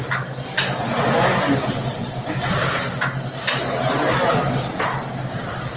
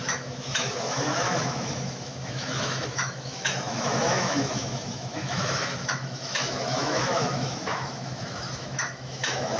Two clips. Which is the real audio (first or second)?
first